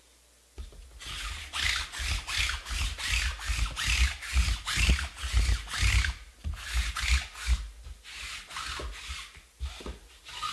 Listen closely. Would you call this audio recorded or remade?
recorded